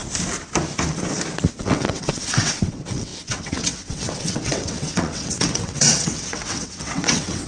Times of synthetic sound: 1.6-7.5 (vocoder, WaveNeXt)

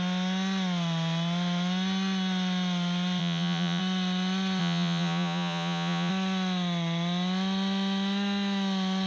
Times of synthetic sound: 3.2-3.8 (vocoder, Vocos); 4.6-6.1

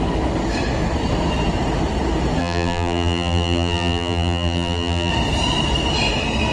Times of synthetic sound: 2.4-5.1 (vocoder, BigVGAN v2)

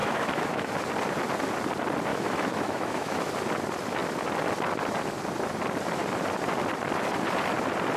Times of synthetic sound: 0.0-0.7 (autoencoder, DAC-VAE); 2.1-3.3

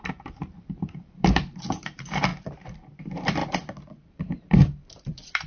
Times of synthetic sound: 0.0-2.3 (vocoder, BigVGAN v2); 3.0-3.4; 4.1-5.5

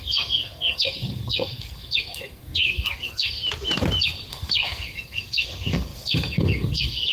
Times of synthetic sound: 0.0-3.4 (codec, SNAC); 4.3-7.1

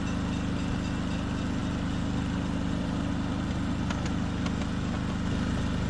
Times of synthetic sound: none